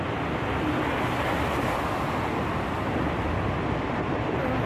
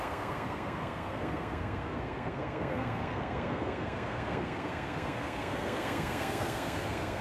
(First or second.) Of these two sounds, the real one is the first